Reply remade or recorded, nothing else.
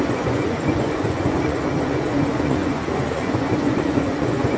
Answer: remade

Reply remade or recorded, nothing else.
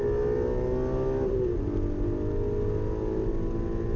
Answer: recorded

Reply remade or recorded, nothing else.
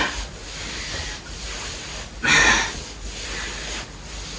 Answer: recorded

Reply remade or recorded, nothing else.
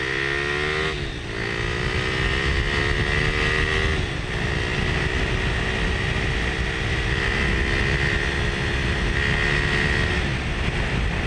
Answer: recorded